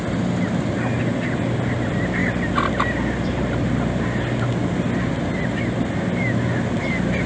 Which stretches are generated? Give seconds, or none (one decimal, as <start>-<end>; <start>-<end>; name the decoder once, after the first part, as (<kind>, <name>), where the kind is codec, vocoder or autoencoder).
none